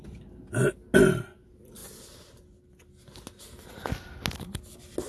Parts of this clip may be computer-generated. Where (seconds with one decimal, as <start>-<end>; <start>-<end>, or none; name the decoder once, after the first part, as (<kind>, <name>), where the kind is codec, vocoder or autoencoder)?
none